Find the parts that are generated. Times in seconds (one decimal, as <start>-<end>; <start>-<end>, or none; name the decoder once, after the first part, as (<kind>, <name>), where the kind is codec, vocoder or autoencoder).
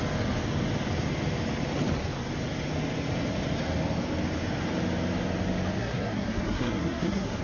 5.8-7.4 (codec, SNAC)